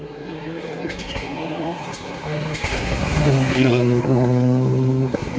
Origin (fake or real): fake